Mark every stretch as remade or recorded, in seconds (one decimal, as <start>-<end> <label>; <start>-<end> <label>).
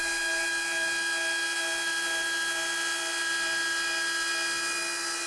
0.0-5.3 recorded